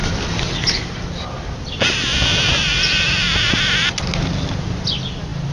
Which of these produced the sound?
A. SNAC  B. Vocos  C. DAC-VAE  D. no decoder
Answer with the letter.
D